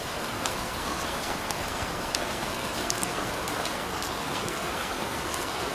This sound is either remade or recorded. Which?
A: remade